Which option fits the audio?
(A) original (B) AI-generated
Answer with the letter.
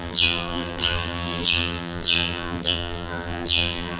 B